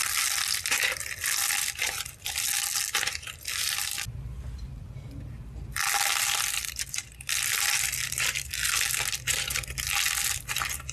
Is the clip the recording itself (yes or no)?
yes